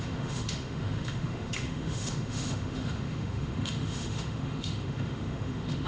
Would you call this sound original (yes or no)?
no